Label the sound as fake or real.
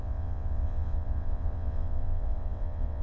fake